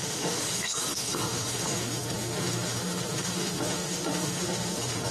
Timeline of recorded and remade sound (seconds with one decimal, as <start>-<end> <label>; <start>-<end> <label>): 0.0-5.1 remade